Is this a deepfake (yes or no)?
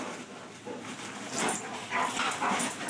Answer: no